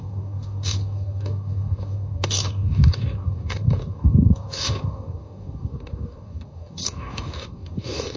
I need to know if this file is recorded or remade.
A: remade